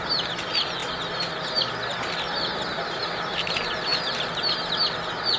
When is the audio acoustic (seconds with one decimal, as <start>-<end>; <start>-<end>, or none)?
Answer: 0.0-5.4